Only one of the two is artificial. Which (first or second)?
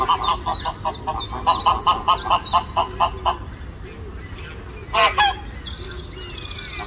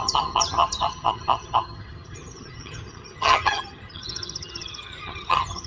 second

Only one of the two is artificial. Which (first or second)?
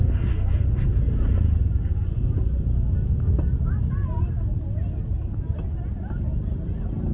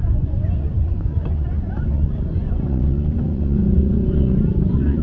second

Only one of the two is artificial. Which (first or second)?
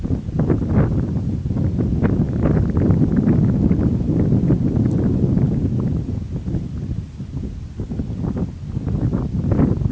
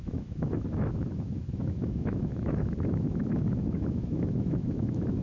second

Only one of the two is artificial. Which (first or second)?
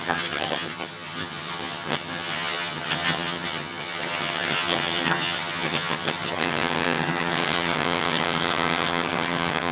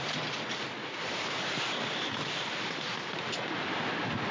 first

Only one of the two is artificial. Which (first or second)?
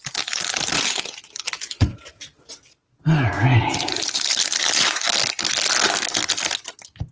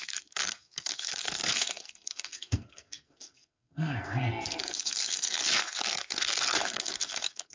second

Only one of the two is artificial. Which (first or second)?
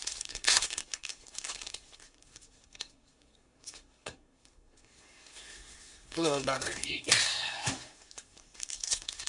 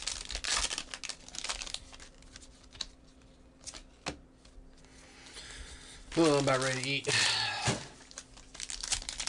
first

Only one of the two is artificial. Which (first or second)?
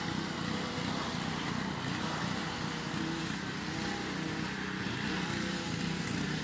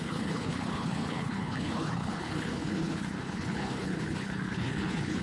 second